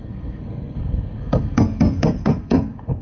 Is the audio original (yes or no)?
no